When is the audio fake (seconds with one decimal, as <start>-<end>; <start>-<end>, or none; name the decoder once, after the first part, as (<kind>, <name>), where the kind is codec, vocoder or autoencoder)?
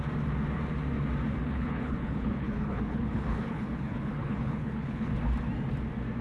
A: 1.4-5.1 (codec, HILCodec)